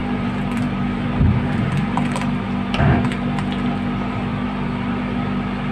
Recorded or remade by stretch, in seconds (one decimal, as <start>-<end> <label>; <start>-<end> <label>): 0.0-2.0 remade; 2.0-4.3 recorded; 4.3-5.0 remade; 5.0-5.7 recorded